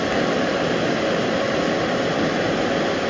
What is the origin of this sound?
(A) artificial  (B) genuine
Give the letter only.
B